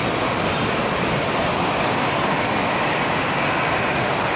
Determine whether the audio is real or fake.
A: real